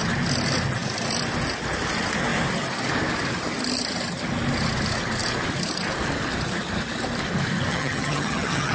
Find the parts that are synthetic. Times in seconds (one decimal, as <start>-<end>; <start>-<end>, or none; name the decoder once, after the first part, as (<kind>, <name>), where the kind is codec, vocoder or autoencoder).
7.7-8.7 (vocoder, HiFi-GAN)